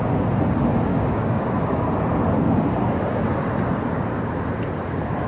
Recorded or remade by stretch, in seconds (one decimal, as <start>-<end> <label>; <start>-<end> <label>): 0.0-0.9 recorded; 0.9-1.5 remade; 1.5-5.3 recorded